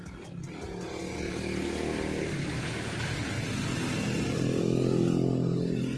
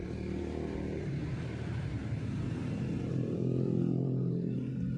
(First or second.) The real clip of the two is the first